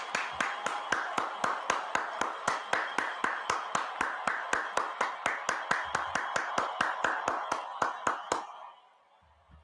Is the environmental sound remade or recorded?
recorded